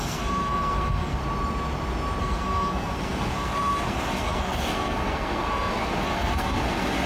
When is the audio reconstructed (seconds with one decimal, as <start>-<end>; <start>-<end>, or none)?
0.0-1.2; 2.2-7.1